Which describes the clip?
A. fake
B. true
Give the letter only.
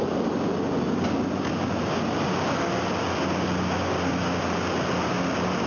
B